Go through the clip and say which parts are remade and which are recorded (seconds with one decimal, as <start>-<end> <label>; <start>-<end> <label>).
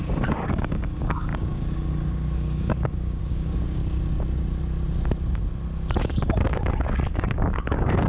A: 0.0-3.8 remade; 3.8-6.0 recorded; 6.0-8.1 remade